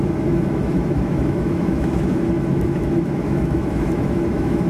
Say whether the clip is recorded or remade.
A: remade